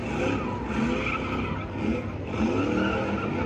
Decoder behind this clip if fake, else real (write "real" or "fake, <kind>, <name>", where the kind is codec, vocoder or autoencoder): real